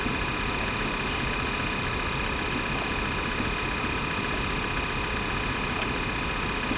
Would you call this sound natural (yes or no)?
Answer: yes